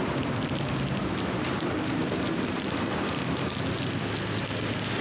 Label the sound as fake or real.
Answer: real